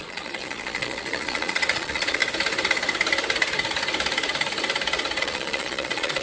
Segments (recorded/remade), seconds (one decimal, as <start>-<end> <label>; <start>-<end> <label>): 0.0-2.2 remade; 2.2-5.2 recorded; 5.2-6.2 remade